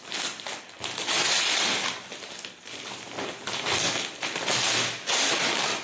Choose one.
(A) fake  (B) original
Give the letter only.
B